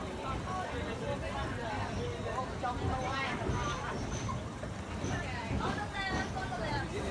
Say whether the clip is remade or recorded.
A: remade